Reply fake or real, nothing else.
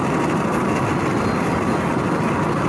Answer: real